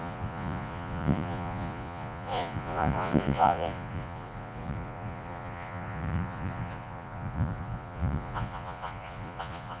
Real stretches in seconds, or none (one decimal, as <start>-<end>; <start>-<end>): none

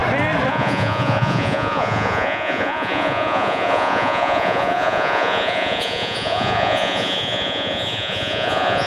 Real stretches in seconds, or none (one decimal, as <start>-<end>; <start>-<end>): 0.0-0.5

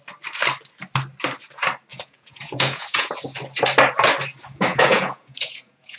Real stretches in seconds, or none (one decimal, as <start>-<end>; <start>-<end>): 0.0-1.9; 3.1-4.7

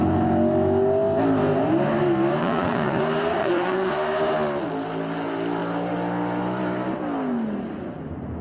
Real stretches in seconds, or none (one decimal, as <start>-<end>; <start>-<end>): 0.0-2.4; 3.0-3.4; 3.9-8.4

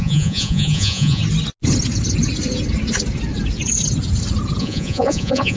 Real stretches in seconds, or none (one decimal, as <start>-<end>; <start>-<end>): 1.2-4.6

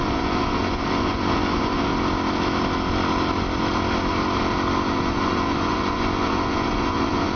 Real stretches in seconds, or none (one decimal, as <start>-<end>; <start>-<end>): 1.9-4.8

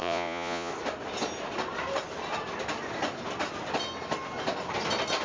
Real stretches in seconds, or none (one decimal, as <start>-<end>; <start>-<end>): 0.7-5.2

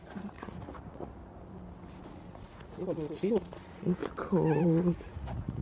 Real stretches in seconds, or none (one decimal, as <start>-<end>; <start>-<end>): 1.2-2.1; 4.0-4.6